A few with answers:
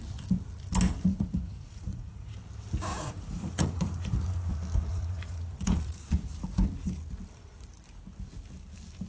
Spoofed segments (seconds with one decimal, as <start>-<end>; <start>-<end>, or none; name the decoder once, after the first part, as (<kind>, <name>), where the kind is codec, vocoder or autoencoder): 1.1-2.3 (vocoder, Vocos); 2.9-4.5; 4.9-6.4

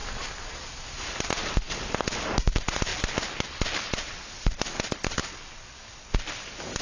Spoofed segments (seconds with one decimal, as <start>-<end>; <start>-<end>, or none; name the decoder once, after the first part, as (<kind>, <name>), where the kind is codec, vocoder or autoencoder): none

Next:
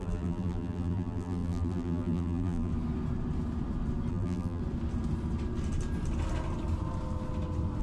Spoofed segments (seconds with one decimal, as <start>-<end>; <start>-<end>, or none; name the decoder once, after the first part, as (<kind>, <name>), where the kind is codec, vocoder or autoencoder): 0.0-2.7 (vocoder, BigVGAN v2); 4.1-4.6

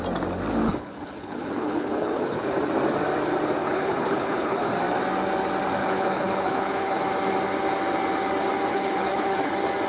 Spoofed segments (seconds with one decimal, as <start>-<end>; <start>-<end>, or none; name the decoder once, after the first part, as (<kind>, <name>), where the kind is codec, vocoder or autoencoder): 0.6-2.4 (codec, HILCodec); 3.6-4.7; 5.8-7.0; 8.7-9.5

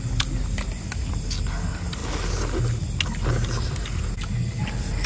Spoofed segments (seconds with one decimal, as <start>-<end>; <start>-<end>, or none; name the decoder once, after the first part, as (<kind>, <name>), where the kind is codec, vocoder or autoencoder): none

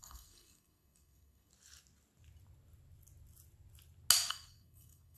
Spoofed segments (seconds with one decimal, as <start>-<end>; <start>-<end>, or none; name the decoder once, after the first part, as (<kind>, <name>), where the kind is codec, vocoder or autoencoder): 0.0-1.5 (codec, SNAC); 4.3-5.2